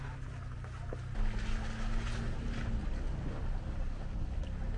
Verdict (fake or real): real